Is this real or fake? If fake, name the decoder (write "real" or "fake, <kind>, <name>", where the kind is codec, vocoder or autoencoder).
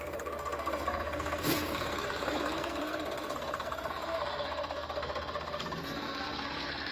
fake, codec, SNAC